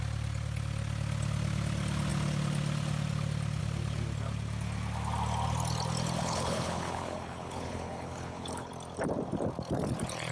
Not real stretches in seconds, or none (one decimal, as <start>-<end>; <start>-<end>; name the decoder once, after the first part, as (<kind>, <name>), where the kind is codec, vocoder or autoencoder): 6.2-8.7 (codec, HILCodec)